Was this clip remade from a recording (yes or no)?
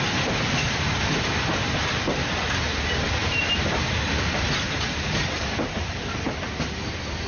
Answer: yes